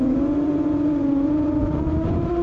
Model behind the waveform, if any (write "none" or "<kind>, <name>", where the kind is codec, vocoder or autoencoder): vocoder, Vocos